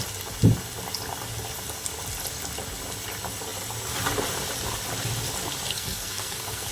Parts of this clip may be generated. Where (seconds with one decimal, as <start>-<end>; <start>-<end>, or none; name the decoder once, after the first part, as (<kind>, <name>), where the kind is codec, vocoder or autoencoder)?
5.7-6.7 (codec, SNAC)